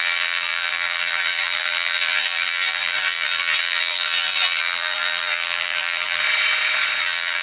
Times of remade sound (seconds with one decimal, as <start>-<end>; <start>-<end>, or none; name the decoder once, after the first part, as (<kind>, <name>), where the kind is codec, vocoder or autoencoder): 0.0-6.2 (vocoder, BigVGAN v2); 7.0-7.4